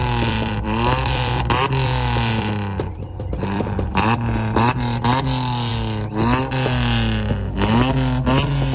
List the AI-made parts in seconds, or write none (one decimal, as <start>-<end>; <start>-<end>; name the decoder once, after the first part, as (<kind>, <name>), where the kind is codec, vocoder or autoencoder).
0.0-4.8 (vocoder, BigVGAN v2)

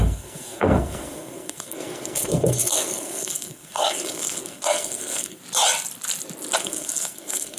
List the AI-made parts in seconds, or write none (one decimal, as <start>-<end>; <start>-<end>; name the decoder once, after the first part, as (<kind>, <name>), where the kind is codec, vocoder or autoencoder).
0.0-5.4 (codec, SNAC); 6.6-7.6

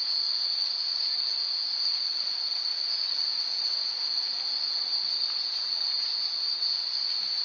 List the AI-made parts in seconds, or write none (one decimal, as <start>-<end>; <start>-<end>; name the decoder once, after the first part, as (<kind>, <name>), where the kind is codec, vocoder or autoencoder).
2.1-2.7 (vocoder, Vocos)

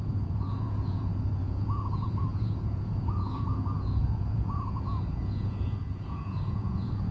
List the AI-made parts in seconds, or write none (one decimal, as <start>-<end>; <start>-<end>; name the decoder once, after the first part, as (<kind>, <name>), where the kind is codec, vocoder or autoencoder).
0.0-7.1 (vocoder, Vocos)

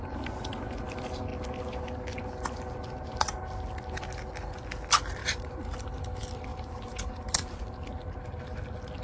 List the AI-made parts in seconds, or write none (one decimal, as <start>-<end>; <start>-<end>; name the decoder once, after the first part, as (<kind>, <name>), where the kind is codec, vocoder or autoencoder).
5.2-6.0 (vocoder, BigVGAN v2); 6.5-7.6

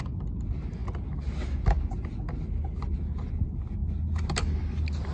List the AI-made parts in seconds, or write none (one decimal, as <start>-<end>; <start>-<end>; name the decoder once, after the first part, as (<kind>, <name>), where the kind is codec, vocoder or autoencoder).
none

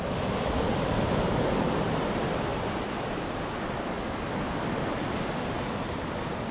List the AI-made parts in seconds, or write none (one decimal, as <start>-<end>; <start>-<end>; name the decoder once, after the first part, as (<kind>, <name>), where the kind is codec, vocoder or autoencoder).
0.0-6.5 (vocoder, BigVGAN v2)

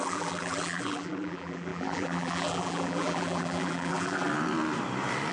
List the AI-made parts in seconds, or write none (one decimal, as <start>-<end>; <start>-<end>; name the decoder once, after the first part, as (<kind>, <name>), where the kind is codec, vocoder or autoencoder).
0.0-4.3 (vocoder, BigVGAN v2)